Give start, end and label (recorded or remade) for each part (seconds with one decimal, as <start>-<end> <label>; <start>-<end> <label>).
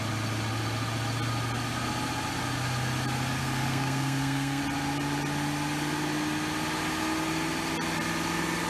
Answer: 0.0-3.4 recorded; 3.4-4.6 remade; 4.6-8.7 recorded